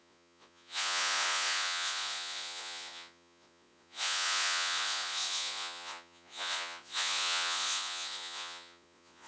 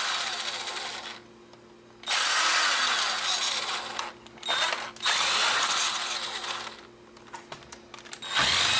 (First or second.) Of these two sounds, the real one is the second